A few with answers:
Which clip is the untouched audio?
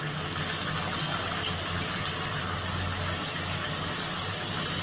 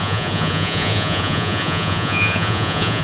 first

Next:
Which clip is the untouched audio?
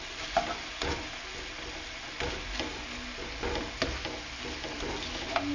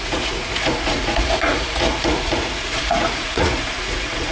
first